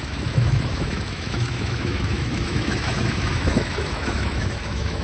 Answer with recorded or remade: remade